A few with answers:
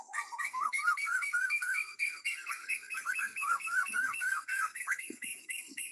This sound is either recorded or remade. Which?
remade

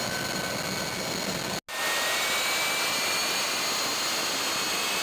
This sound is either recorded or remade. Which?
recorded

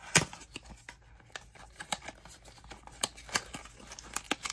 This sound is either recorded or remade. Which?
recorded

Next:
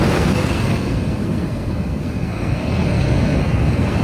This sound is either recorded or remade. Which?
remade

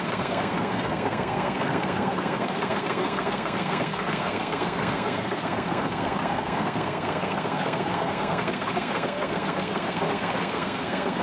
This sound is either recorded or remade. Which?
remade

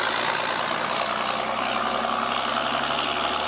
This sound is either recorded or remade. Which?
recorded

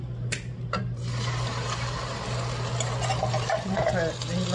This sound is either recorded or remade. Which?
recorded